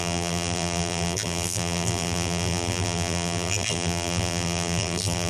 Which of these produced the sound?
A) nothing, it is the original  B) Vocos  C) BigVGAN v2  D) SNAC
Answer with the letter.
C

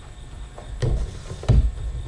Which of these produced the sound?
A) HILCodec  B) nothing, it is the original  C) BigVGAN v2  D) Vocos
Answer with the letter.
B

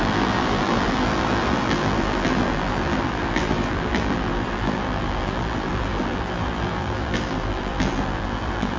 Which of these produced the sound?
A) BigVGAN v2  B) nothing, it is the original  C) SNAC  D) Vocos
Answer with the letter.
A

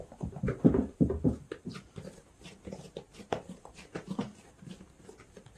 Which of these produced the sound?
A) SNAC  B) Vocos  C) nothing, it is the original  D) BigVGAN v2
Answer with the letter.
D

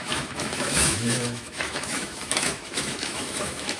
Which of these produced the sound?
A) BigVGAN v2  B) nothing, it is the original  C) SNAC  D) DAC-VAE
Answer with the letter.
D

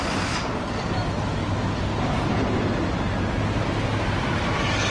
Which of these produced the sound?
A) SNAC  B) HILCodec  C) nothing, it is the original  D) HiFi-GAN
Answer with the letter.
C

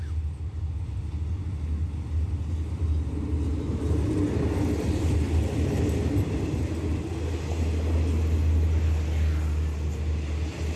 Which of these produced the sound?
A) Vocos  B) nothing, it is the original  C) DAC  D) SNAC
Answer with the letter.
B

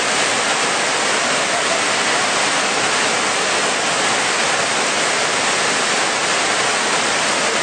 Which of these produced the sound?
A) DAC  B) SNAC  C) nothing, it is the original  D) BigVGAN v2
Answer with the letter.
C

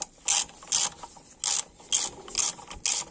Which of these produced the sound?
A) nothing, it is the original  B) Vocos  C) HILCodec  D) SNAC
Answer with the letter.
A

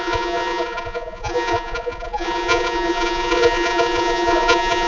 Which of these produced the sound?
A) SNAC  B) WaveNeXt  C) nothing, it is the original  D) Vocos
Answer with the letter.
D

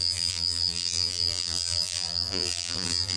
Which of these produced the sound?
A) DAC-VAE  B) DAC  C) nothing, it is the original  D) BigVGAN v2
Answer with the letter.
D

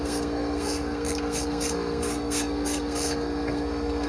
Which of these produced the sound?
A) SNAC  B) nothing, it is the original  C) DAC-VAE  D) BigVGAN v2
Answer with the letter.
A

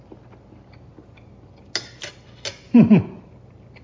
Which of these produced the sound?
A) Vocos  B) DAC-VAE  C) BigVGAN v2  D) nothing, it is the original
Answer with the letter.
D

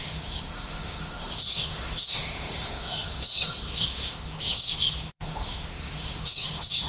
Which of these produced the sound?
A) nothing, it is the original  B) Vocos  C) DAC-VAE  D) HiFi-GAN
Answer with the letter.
C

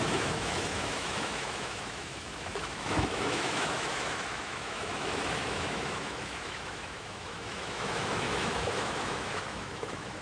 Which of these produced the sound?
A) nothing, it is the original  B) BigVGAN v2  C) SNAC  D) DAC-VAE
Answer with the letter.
D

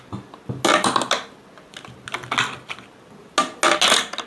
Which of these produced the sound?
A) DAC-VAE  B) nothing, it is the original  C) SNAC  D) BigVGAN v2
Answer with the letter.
B